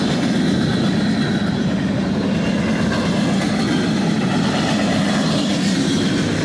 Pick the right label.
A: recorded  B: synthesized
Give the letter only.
A